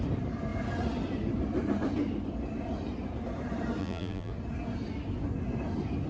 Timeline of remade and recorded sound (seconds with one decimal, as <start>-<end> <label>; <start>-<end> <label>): 0.0-3.8 recorded; 3.8-4.3 remade; 4.3-6.1 recorded